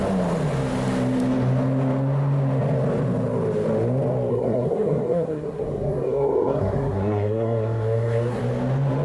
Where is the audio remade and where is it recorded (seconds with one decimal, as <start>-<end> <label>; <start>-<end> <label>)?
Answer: 0.0-4.3 recorded; 4.3-8.4 remade; 8.4-9.0 recorded

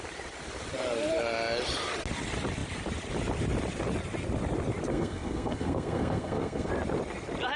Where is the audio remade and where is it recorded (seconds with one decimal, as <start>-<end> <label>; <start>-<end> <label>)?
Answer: 0.0-4.9 recorded; 4.9-6.7 remade; 6.7-7.6 recorded